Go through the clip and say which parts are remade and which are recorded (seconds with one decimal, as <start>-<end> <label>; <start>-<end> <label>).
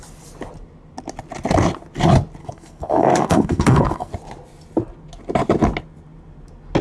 0.0-2.4 recorded; 2.4-4.1 remade; 4.1-6.8 recorded